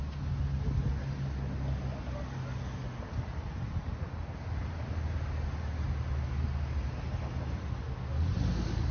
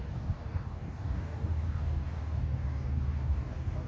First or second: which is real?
first